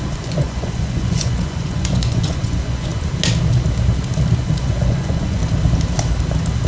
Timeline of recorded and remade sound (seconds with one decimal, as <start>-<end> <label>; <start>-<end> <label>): 0.0-2.9 remade; 2.9-4.4 recorded; 4.4-5.4 remade; 5.4-6.7 recorded